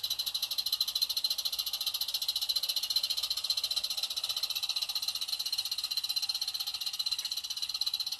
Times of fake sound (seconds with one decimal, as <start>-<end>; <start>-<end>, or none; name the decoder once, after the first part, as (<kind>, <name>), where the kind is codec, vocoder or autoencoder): none